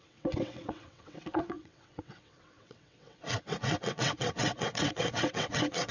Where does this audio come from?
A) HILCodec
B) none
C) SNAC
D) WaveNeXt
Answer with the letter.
D